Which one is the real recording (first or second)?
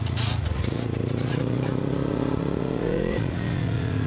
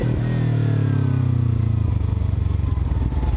second